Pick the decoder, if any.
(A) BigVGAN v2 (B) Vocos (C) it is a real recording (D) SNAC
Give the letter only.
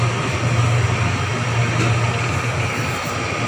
C